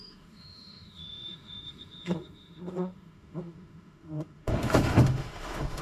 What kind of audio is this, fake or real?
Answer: fake